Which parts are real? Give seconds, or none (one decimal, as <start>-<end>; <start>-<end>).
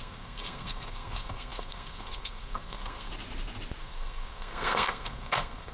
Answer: 3.1-3.8